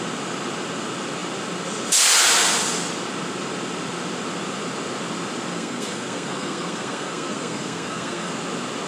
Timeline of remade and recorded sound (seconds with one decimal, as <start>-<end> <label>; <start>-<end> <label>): 0.0-5.5 recorded; 5.5-8.3 remade; 8.3-8.9 recorded

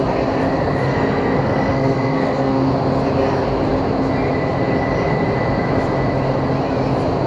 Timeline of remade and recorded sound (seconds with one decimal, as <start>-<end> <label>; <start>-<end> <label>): 0.0-0.8 recorded; 0.8-2.7 remade; 2.7-7.3 recorded

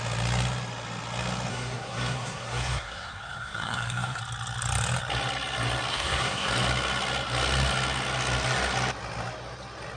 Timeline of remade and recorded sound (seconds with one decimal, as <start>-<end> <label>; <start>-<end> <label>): 0.0-1.5 recorded; 1.5-4.2 remade; 4.2-5.9 recorded; 5.9-6.5 remade; 6.5-10.0 recorded

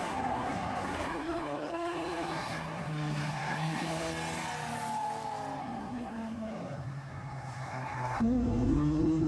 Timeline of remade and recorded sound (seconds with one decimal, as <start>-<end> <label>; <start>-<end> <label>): 0.0-4.1 remade; 4.1-5.6 recorded; 5.6-9.3 remade

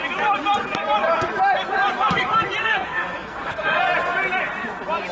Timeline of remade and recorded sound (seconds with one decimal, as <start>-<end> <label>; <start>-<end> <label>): 0.0-2.6 recorded; 2.6-3.8 remade; 3.8-5.1 recorded